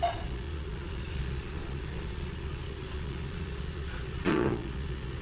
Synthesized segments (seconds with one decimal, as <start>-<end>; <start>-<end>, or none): 0.0-5.2